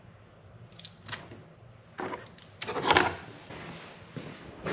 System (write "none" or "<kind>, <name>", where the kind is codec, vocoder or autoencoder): none